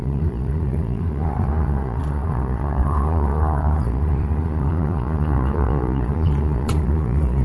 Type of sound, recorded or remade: remade